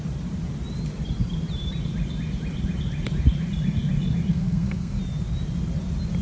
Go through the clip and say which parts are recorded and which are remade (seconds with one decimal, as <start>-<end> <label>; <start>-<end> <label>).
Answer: 0.0-4.3 recorded; 4.3-5.0 remade; 5.0-6.2 recorded